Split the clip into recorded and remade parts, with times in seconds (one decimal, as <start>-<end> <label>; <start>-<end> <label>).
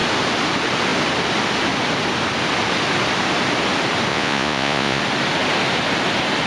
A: 0.0-4.1 recorded; 4.1-5.0 remade; 5.0-6.5 recorded